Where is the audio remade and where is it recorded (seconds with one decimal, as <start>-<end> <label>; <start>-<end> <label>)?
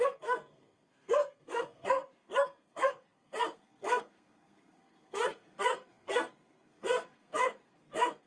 0.0-8.3 remade